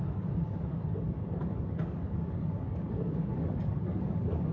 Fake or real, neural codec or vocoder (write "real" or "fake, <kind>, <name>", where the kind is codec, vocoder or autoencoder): fake, codec, DAC